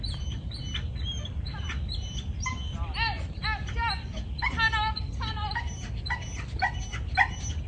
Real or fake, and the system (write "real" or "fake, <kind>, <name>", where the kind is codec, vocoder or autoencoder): real